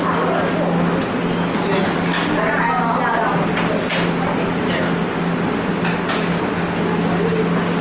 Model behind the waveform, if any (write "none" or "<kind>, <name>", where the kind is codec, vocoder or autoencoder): none